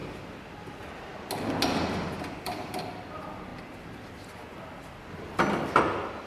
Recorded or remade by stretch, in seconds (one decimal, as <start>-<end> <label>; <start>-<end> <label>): 0.0-1.1 remade; 1.1-2.4 recorded; 2.4-6.3 remade